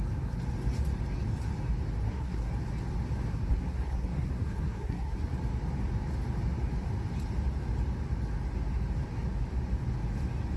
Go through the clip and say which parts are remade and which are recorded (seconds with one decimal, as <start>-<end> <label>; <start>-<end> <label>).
0.0-2.0 recorded; 2.0-2.5 remade; 2.5-3.3 recorded; 3.3-5.2 remade; 5.2-10.6 recorded